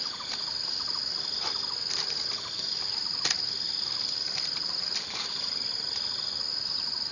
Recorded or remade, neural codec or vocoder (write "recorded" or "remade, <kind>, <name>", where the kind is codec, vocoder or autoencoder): recorded